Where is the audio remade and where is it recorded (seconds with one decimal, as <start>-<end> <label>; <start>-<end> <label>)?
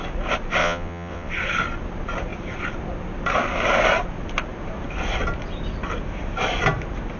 0.0-0.6 recorded; 0.6-1.3 remade; 1.3-7.2 recorded